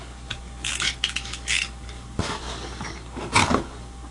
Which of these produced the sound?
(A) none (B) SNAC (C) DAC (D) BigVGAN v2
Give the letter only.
C